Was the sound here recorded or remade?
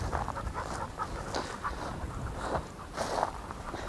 recorded